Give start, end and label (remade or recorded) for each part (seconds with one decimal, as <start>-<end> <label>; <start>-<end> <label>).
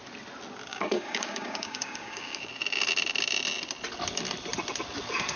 0.0-0.7 recorded; 0.7-2.5 remade; 2.5-5.4 recorded